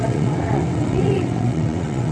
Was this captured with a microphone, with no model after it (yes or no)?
no